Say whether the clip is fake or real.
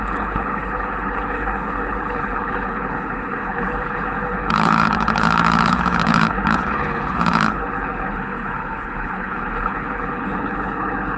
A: fake